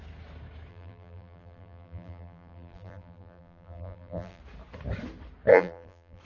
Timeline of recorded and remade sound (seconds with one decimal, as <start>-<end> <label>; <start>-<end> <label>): 0.0-0.7 recorded; 0.7-4.4 remade; 4.4-5.5 recorded; 5.5-6.2 remade

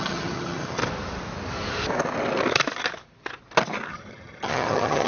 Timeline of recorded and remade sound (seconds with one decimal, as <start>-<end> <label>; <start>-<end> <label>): 0.0-0.8 remade; 0.8-3.9 recorded; 3.9-5.1 remade

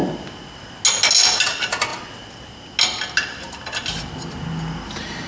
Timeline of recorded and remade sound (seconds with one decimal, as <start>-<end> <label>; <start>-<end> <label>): 0.0-5.3 recorded

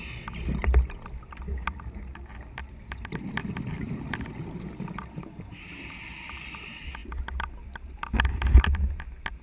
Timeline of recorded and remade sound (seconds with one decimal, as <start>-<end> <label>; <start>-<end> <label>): 0.0-9.4 recorded

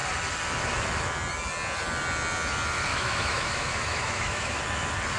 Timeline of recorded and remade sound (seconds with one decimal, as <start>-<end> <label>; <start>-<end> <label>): 0.0-2.9 recorded; 2.9-4.6 remade; 4.6-5.2 recorded

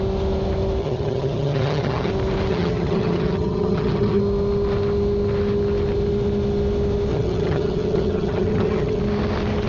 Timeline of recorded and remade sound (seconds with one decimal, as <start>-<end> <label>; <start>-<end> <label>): 0.0-0.8 recorded; 0.8-2.1 remade; 2.1-2.5 recorded; 2.5-4.2 remade; 4.2-7.1 recorded; 7.1-9.0 remade; 9.0-9.7 recorded

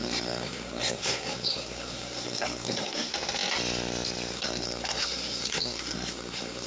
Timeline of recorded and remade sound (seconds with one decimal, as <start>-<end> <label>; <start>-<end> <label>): 0.0-3.1 remade; 3.1-4.3 recorded; 4.3-6.7 remade